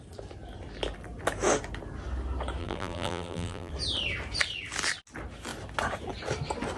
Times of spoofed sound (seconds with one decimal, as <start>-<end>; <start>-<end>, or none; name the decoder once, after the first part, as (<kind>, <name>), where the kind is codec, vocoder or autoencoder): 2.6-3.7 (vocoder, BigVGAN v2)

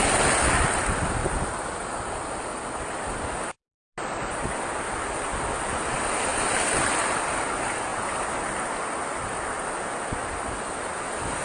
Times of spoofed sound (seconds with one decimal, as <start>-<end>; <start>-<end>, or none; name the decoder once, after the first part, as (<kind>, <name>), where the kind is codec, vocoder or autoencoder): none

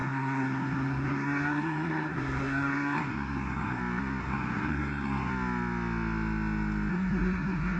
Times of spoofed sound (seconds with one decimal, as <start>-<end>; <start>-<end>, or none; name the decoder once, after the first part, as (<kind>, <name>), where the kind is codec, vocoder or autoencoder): 0.0-3.8 (codec, SNAC); 4.2-5.3; 6.9-7.8

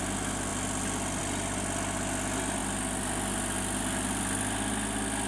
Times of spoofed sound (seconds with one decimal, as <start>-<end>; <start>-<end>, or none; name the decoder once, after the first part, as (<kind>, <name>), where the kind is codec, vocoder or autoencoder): none